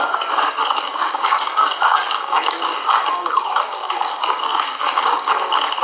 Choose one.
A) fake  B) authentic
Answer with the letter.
A